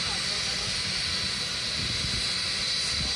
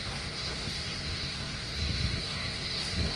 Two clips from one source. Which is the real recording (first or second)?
first